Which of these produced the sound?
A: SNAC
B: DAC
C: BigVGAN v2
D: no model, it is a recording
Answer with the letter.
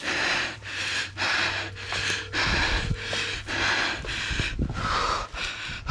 D